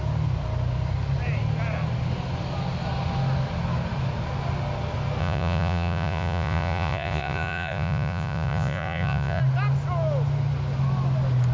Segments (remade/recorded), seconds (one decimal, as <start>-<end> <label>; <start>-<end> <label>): 0.0-5.2 recorded; 5.2-9.4 remade; 9.4-11.5 recorded